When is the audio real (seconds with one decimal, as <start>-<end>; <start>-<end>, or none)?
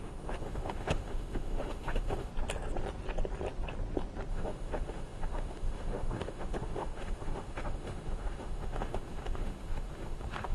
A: 2.3-4.3